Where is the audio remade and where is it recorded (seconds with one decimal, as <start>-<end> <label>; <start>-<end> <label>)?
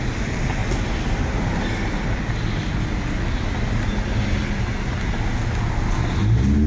0.0-6.7 recorded